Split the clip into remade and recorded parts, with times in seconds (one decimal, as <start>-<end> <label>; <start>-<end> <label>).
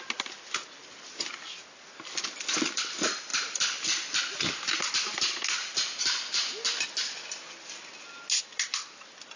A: 0.0-9.4 recorded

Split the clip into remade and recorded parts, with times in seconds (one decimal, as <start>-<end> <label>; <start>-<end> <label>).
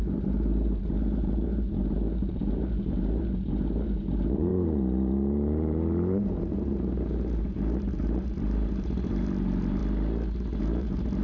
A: 0.0-9.8 remade; 9.8-10.6 recorded; 10.6-11.2 remade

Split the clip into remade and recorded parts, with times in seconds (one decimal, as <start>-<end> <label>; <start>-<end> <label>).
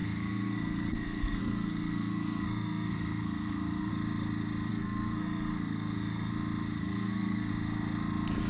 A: 0.0-3.9 remade; 3.9-4.7 recorded; 4.7-6.3 remade; 6.3-6.8 recorded; 6.8-7.5 remade; 7.5-8.5 recorded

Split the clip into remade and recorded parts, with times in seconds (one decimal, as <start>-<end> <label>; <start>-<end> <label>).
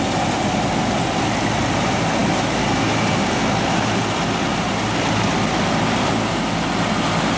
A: 0.0-7.4 recorded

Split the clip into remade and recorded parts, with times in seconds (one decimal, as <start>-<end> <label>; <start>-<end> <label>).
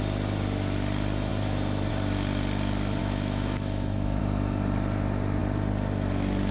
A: 0.0-3.0 recorded; 3.0-4.2 remade; 4.2-6.5 recorded